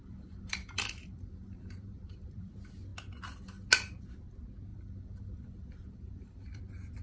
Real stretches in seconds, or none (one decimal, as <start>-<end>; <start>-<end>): 2.5-4.7; 6.6-7.0